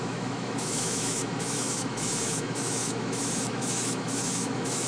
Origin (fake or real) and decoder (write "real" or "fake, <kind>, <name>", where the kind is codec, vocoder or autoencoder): fake, autoencoder, DAC-VAE